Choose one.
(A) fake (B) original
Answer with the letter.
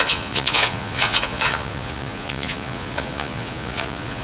A